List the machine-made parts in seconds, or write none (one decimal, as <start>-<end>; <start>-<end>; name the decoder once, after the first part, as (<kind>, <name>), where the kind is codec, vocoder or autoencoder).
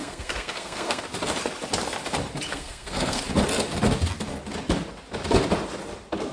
0.0-1.0 (codec, SNAC); 2.5-3.2